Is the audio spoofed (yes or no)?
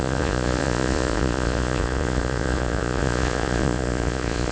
yes